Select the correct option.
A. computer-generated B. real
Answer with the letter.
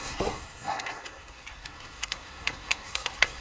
A